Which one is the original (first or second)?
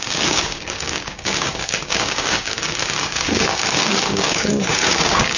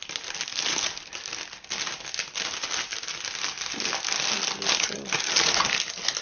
second